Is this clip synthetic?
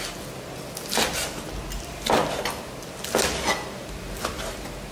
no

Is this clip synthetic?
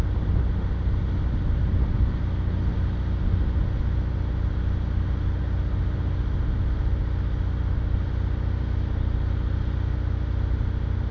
no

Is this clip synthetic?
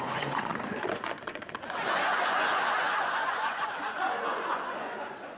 yes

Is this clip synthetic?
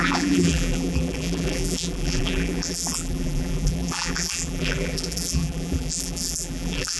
yes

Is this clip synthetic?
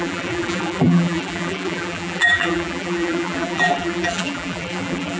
yes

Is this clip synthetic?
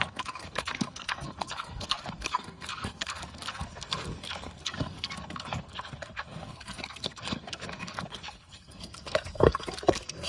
yes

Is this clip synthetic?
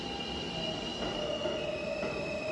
no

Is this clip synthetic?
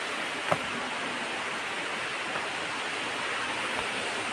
no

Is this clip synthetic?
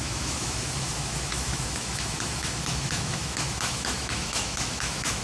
yes